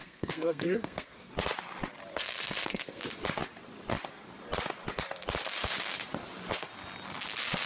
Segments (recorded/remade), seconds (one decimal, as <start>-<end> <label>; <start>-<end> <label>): 0.0-1.3 remade; 1.3-2.1 recorded; 2.1-3.0 remade; 3.0-7.7 recorded